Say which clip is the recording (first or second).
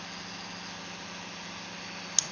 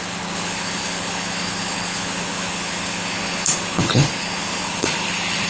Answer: first